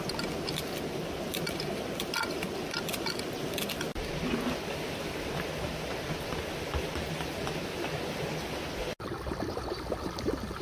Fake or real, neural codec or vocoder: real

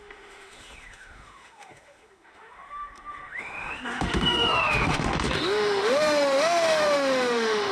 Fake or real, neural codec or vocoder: fake, autoencoder, DAC-VAE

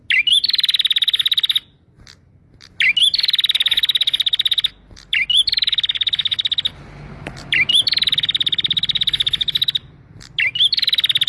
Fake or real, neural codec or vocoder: real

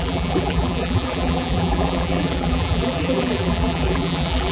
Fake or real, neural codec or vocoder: fake, vocoder, BigVGAN v2